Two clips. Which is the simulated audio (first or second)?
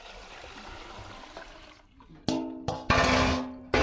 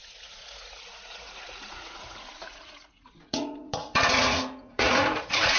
second